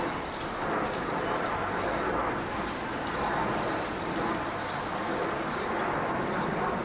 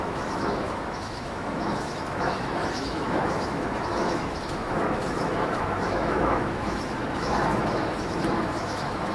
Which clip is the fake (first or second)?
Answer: second